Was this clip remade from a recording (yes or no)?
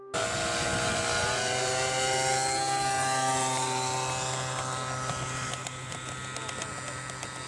no